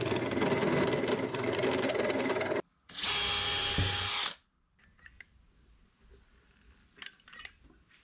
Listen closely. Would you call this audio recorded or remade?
recorded